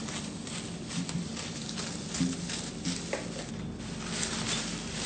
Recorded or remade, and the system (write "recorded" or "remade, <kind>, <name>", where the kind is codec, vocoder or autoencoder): recorded